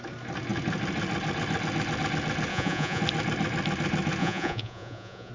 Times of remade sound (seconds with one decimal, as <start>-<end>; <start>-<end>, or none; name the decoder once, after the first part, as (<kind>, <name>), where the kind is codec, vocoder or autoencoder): 2.5-3.0 (vocoder, Vocos); 4.2-5.3